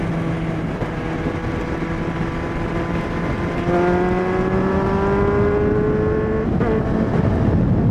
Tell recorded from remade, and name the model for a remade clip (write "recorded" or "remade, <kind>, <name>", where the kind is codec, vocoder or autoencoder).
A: recorded